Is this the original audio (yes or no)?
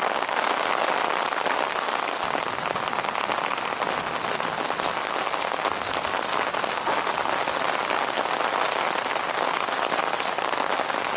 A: yes